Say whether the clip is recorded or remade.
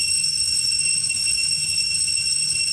remade